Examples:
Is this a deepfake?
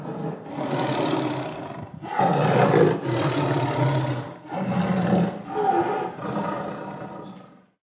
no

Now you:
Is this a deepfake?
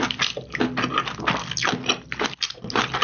no